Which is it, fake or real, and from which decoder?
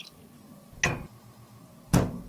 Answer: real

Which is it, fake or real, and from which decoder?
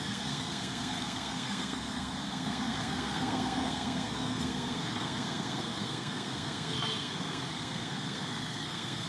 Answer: fake, codec, SNAC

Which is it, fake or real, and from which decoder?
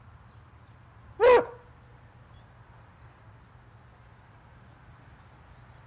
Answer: real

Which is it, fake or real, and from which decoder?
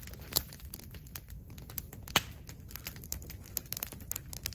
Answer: real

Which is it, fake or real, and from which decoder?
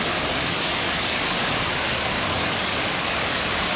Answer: fake, codec, DAC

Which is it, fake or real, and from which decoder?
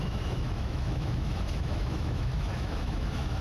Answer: fake, autoencoder, DAC-VAE